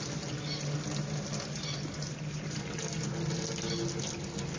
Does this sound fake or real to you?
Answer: real